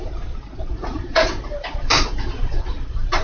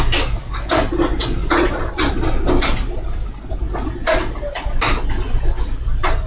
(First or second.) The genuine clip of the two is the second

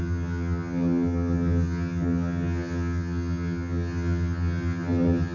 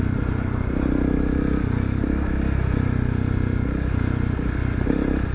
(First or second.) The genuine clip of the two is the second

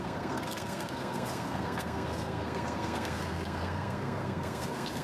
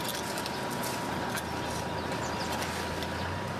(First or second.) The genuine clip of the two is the second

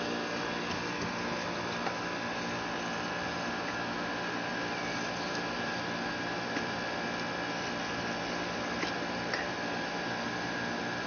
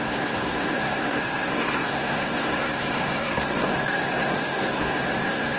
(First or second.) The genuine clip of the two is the first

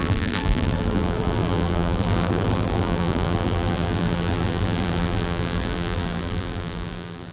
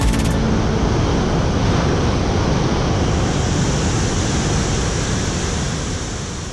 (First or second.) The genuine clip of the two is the second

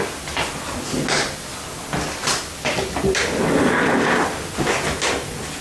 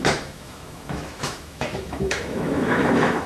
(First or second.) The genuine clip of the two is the first